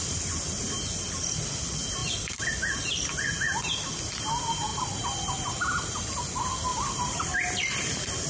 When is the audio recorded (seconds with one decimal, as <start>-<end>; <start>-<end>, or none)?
0.0-2.0; 2.5-4.7; 5.9-6.7; 7.6-8.3